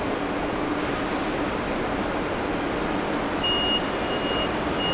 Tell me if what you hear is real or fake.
real